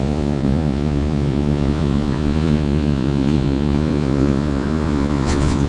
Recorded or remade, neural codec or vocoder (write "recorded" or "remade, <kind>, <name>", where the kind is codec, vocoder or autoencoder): remade, vocoder, Vocos